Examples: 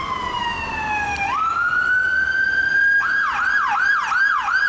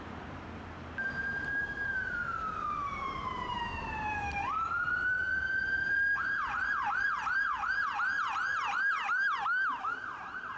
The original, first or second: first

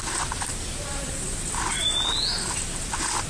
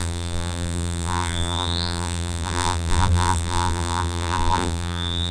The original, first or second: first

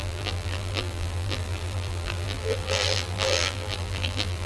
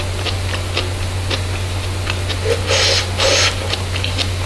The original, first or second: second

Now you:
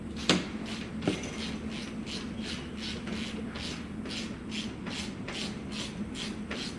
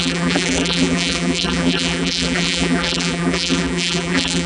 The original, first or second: first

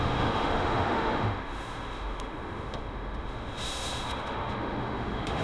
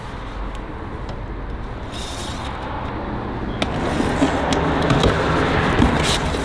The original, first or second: second